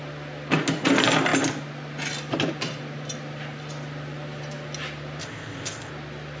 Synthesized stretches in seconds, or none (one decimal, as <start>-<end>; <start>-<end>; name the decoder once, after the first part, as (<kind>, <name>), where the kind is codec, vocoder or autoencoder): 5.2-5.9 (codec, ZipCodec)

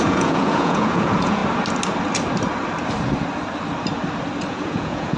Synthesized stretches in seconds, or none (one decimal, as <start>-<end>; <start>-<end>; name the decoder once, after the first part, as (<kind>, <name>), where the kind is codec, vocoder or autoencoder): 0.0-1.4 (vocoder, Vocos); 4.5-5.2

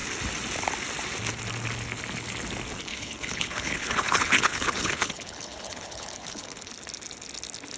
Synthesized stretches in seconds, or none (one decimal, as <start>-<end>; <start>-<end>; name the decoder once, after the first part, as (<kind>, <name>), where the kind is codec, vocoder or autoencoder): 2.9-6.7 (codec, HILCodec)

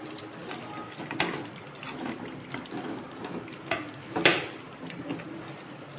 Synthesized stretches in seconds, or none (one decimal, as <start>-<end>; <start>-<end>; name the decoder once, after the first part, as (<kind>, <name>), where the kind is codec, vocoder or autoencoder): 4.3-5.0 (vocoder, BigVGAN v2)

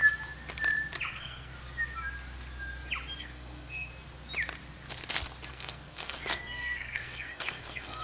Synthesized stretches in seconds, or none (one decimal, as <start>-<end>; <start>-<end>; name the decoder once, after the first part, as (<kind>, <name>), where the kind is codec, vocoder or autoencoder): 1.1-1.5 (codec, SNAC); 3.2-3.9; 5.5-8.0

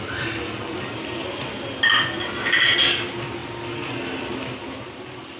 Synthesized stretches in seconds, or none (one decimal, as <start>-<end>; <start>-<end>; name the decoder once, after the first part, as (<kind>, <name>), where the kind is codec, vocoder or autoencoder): none

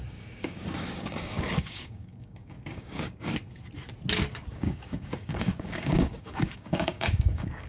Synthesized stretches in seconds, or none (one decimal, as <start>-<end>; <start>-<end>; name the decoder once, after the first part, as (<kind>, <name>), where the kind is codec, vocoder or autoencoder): 0.0-3.4 (codec, DAC); 4.5-7.7